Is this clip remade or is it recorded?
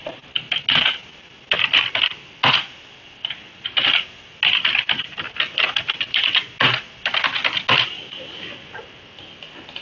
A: recorded